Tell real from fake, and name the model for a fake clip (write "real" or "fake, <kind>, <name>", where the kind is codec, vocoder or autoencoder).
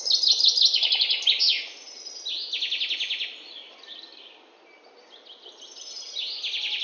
real